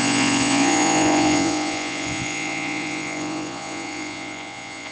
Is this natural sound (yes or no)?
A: no